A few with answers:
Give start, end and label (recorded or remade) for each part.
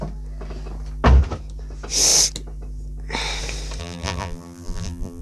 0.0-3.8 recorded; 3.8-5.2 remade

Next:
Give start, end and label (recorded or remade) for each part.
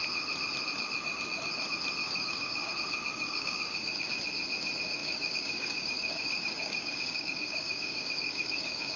0.0-2.0 recorded; 2.0-2.7 remade; 2.7-3.1 recorded; 3.1-4.0 remade; 4.0-5.0 recorded; 5.0-9.0 remade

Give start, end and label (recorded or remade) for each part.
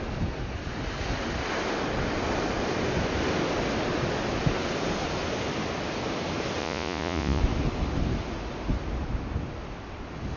0.0-6.6 recorded; 6.6-7.4 remade; 7.4-10.4 recorded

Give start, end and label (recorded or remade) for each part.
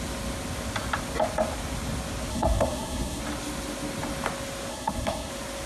0.0-2.3 recorded; 2.3-3.2 remade; 3.2-4.7 recorded; 4.7-5.3 remade; 5.3-5.7 recorded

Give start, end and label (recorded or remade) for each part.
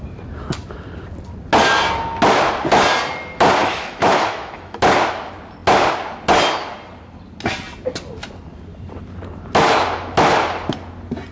0.0-3.6 recorded; 3.6-4.8 remade; 4.8-11.3 recorded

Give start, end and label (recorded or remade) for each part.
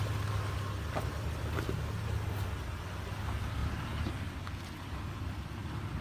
0.0-6.0 recorded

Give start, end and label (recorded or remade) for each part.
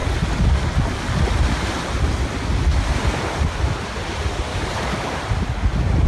0.0-4.5 recorded; 4.5-5.2 remade; 5.2-6.1 recorded